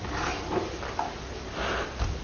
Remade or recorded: recorded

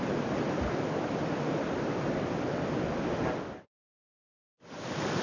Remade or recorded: recorded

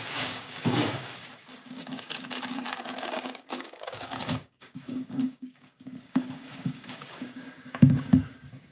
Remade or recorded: remade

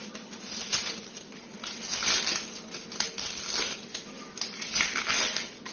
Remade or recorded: recorded